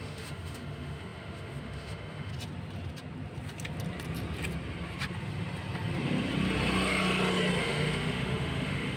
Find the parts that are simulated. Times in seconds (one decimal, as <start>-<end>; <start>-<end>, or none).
0.0-2.3; 7.6-9.0